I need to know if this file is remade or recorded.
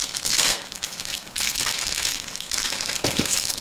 remade